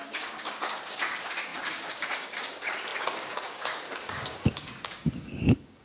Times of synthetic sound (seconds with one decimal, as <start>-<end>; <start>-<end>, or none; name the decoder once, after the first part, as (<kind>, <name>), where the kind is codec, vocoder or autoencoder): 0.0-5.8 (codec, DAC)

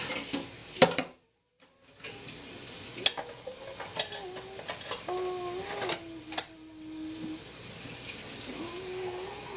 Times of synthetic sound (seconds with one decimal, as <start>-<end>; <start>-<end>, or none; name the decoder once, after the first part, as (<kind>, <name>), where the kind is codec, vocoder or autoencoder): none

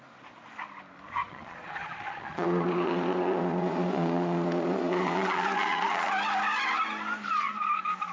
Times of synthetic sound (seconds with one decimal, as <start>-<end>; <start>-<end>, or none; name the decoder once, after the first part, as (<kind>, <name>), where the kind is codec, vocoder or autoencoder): 1.2-6.1 (vocoder, Vocos)

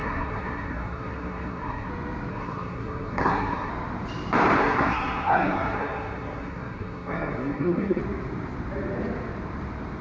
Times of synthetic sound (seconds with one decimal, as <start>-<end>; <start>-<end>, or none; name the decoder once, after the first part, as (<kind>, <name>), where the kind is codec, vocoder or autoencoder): 0.0-1.9 (codec, SNAC); 2.3-3.7; 4.6-8.0